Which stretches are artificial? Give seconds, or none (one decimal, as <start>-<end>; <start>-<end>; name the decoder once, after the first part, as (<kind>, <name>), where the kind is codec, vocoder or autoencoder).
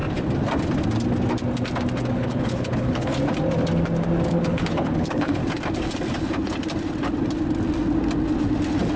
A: 2.1-3.1 (codec, HILCodec); 4.3-5.4